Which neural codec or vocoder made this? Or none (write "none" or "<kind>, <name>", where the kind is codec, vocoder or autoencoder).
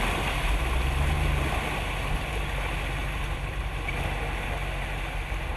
none